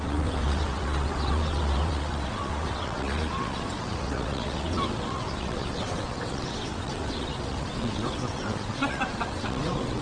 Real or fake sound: fake